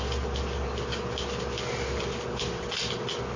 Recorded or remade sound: recorded